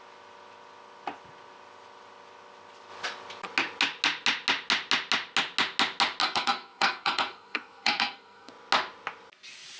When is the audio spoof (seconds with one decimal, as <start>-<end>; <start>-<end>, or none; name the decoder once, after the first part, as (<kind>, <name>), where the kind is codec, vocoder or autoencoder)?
6.2-8.5 (codec, SNAC)